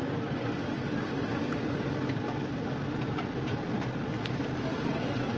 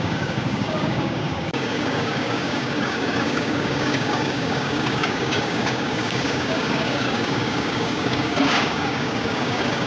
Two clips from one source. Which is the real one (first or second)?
first